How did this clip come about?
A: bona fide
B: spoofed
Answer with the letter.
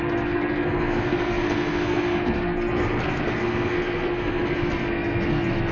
B